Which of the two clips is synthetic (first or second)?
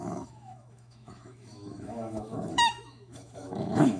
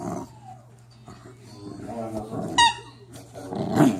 first